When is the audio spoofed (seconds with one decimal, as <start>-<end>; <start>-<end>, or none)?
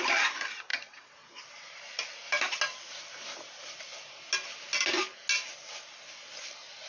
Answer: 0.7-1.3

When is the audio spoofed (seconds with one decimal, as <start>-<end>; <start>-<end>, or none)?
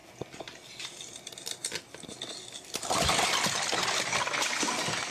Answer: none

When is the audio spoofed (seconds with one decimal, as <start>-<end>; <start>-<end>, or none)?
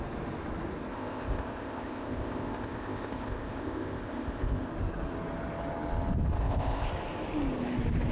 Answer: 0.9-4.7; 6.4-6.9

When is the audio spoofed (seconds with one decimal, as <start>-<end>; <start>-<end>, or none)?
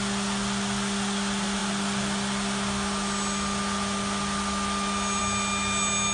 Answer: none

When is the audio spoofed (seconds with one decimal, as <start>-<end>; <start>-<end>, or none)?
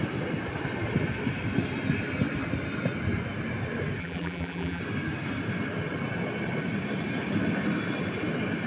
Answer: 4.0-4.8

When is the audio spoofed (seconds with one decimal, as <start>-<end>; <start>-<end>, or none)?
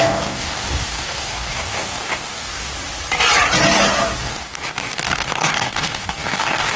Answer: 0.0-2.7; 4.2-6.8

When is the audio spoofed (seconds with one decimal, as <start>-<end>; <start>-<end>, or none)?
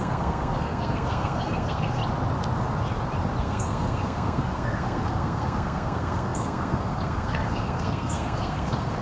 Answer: 0.0-2.0; 3.4-9.0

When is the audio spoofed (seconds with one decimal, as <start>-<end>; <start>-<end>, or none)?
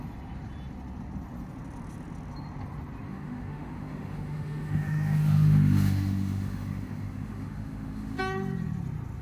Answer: 3.1-8.2